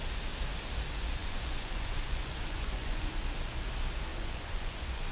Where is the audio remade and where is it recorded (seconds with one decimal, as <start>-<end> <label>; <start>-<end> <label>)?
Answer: 0.0-1.2 recorded; 1.2-3.1 remade; 3.1-4.1 recorded; 4.1-5.1 remade